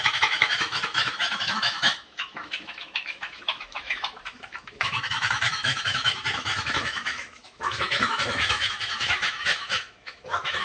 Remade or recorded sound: remade